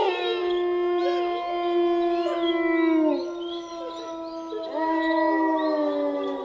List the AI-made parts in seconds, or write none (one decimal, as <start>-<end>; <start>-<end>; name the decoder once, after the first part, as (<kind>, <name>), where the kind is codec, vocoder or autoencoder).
none